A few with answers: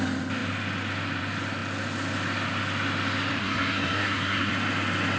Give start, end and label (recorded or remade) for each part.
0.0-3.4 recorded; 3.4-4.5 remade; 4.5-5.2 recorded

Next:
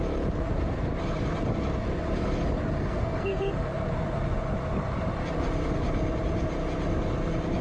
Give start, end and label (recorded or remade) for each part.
0.0-2.8 recorded; 2.8-3.5 remade; 3.5-7.6 recorded

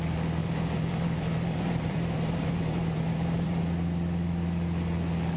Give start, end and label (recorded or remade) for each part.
0.0-0.4 recorded; 0.4-3.6 remade; 3.6-5.4 recorded

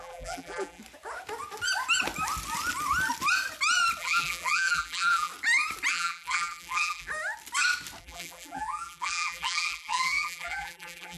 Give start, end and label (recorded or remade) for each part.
0.0-0.8 remade; 0.8-4.0 recorded; 4.0-5.3 remade; 5.3-5.9 recorded; 5.9-7.1 remade; 7.1-8.0 recorded; 8.0-11.2 remade

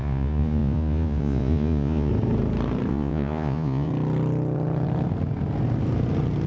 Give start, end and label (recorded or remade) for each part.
0.0-2.1 remade; 2.1-2.9 recorded; 2.9-3.9 remade; 3.9-6.5 recorded